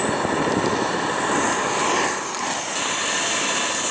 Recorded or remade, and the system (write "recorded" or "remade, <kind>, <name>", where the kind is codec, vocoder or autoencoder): recorded